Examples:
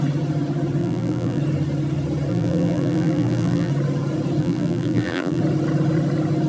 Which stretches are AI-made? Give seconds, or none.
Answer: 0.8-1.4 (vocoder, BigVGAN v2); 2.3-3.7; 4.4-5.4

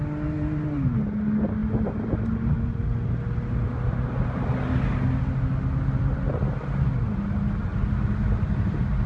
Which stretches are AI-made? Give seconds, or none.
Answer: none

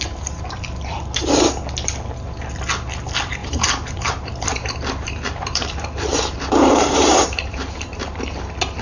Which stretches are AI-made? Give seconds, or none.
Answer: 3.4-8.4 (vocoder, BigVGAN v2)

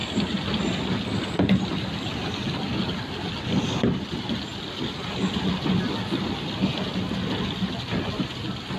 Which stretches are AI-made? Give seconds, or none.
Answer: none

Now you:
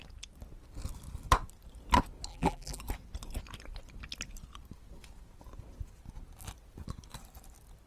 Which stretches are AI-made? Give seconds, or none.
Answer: 2.3-2.8 (vocoder, BigVGAN v2)

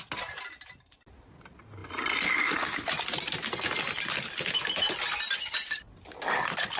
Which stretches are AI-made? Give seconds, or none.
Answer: none